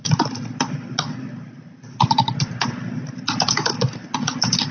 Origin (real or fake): real